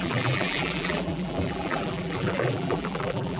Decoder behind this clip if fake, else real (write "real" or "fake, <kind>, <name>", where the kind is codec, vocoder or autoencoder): fake, vocoder, BigVGAN v2